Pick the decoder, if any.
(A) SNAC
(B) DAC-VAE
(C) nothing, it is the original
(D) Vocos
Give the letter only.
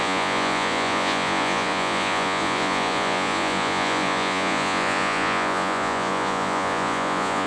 D